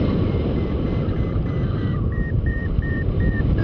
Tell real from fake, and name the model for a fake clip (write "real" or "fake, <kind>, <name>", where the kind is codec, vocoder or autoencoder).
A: fake, vocoder, BigVGAN v2